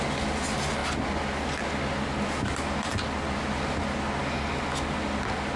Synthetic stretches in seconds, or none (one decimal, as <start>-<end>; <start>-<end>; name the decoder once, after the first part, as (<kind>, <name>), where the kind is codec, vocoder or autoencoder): none